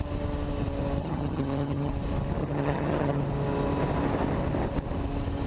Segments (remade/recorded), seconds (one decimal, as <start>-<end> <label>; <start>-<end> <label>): 0.0-1.0 recorded; 1.0-1.9 remade; 1.9-2.4 recorded; 2.4-3.2 remade; 3.2-5.5 recorded